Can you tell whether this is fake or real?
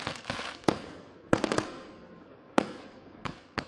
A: fake